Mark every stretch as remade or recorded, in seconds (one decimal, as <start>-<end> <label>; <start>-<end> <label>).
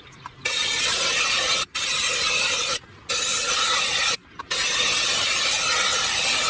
0.0-6.5 recorded